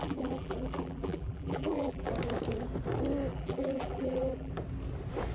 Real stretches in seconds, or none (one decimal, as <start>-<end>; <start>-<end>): 2.1-3.3; 4.5-5.3